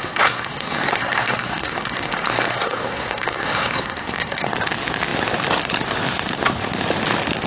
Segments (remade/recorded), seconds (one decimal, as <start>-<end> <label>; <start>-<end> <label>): 0.0-4.5 remade; 4.5-7.5 recorded